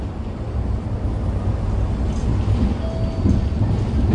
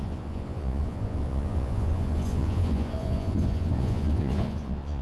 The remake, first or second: second